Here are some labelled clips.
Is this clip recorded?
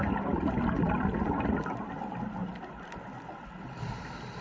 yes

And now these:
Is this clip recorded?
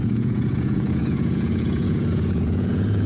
no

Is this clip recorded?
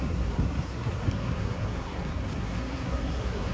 no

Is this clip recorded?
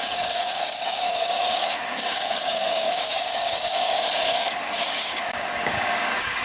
no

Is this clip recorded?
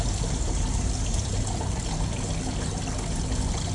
yes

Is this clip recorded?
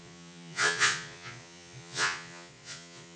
no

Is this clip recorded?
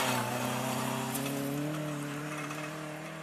yes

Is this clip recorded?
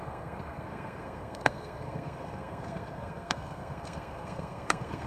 no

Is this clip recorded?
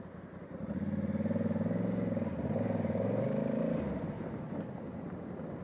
yes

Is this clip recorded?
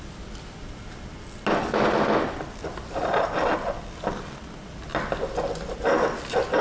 yes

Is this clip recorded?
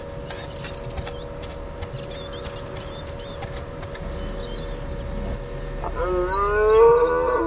yes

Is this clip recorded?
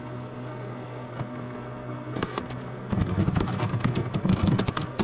no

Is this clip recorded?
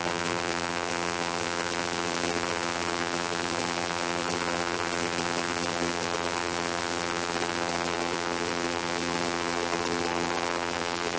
no